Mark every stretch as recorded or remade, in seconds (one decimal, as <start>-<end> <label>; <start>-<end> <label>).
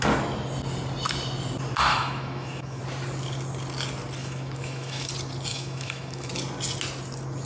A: 0.0-1.9 recorded; 1.9-2.8 remade; 2.8-4.2 recorded; 4.2-5.1 remade; 5.1-5.5 recorded; 5.5-6.3 remade; 6.3-7.5 recorded